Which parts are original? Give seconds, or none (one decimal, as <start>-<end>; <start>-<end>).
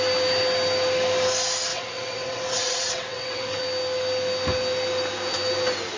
0.0-1.7; 3.6-6.0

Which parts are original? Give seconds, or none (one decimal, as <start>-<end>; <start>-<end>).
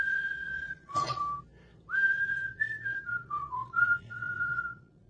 1.2-2.1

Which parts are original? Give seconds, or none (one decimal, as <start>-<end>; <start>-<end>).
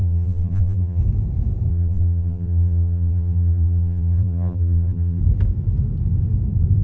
1.0-1.7; 5.2-6.8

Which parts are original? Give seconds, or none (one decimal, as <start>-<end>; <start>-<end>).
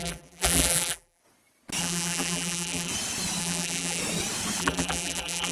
1.2-1.8; 2.9-3.4; 4.0-4.6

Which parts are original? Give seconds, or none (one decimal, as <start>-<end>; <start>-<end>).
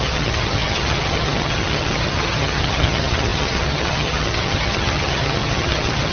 none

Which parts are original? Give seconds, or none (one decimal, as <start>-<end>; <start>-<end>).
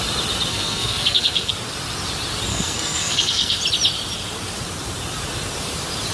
0.0-0.5; 1.5-2.5; 3.6-6.1